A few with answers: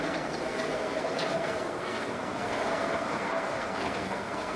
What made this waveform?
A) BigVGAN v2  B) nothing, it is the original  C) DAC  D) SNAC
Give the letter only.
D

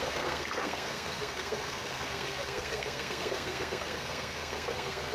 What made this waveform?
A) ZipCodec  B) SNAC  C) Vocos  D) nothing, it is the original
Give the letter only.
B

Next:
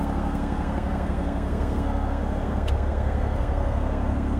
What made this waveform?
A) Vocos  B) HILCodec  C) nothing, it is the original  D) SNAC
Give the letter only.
D